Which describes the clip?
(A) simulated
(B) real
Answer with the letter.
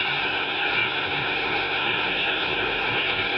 A